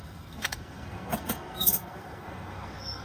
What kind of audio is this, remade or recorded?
remade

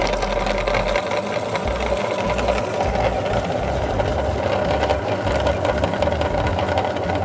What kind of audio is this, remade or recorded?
recorded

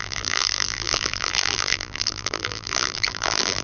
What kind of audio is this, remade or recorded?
remade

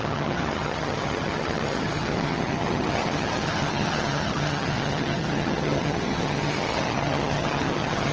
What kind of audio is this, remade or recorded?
remade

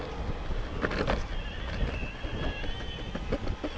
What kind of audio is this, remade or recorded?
recorded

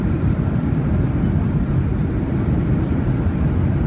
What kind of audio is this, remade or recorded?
remade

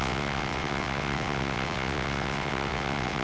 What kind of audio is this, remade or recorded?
remade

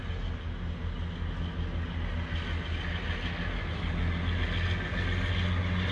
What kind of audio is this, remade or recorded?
recorded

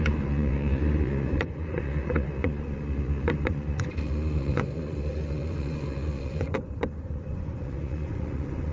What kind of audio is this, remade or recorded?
remade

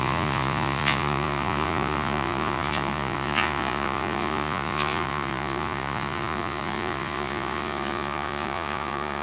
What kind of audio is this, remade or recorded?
remade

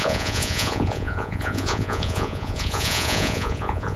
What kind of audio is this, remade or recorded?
remade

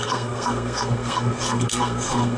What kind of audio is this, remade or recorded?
remade